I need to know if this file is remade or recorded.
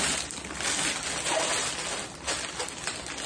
recorded